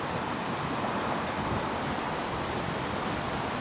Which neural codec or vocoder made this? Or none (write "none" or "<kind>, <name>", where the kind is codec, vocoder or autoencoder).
none